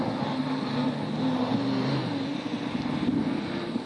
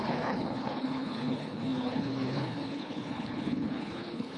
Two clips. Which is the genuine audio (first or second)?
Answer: first